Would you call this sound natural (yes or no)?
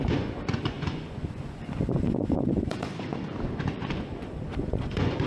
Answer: no